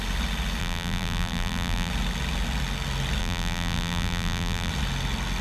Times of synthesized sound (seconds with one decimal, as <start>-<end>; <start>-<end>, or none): 0.6-1.9; 3.2-4.7